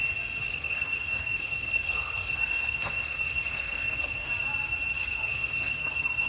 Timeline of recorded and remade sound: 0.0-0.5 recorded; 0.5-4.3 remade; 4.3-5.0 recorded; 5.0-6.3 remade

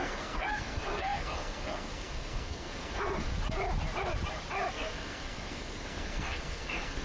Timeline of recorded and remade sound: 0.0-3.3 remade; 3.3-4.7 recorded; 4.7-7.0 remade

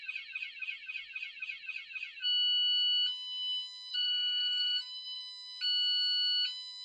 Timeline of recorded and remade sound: 0.0-3.9 recorded; 3.9-5.2 remade; 5.2-6.8 recorded

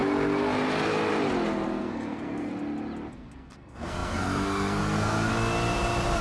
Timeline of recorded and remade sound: 0.0-1.8 recorded; 1.8-2.5 remade; 2.5-3.1 recorded; 3.1-5.3 remade; 5.3-6.2 recorded